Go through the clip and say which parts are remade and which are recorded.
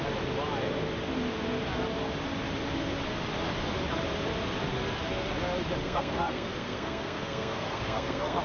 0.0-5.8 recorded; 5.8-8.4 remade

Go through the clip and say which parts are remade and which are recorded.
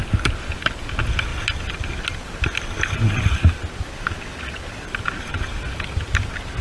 0.0-6.6 recorded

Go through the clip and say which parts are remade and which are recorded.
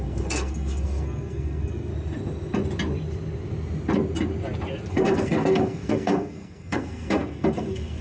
0.0-1.9 remade; 1.9-4.9 recorded; 4.9-8.0 remade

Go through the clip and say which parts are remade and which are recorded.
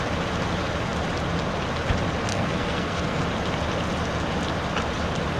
0.0-2.3 recorded; 2.3-3.2 remade; 3.2-5.4 recorded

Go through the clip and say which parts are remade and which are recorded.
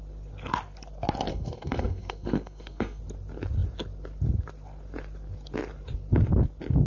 0.0-1.3 recorded; 1.3-3.0 remade; 3.0-6.9 recorded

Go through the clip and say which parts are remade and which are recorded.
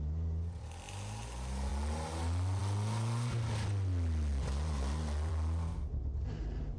0.0-6.8 recorded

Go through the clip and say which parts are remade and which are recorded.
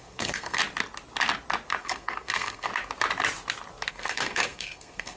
0.0-0.6 remade; 0.6-1.8 recorded; 1.8-2.7 remade; 2.7-3.9 recorded; 3.9-5.2 remade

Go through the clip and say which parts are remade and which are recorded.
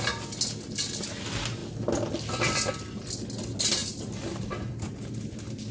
0.0-5.7 recorded